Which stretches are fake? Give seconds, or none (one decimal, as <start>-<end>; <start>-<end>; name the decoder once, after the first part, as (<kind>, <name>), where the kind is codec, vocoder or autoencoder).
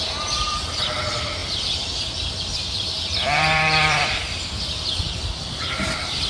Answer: 0.0-4.2 (vocoder, BigVGAN v2); 5.0-6.3